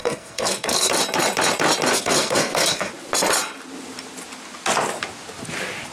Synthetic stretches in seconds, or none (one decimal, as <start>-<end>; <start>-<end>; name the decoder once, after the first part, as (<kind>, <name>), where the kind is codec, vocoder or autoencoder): 0.0-0.9 (codec, SNAC); 1.9-2.9